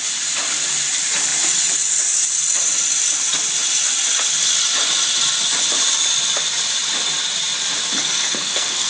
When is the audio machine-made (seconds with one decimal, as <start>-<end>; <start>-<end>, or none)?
7.9-8.9